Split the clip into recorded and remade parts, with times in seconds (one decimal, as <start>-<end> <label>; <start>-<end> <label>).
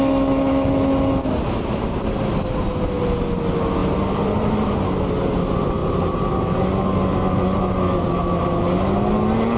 0.0-3.8 recorded; 3.8-5.1 remade; 5.1-5.8 recorded; 5.8-6.4 remade; 6.4-9.6 recorded